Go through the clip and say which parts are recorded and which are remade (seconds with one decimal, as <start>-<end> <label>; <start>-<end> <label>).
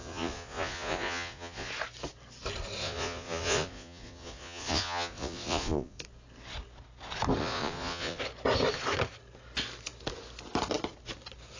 0.0-1.7 remade; 1.7-2.8 recorded; 2.8-6.0 remade; 6.0-7.4 recorded; 7.4-8.2 remade; 8.2-11.6 recorded